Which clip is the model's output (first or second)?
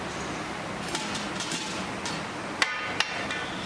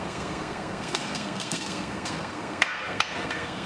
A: second